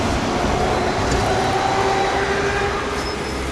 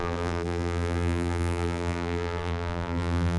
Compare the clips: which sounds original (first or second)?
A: first